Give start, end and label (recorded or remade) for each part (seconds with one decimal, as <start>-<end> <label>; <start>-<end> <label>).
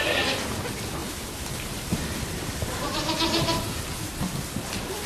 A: 0.0-1.0 recorded; 1.0-1.5 remade; 1.5-5.1 recorded